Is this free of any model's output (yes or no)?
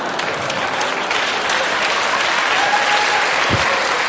yes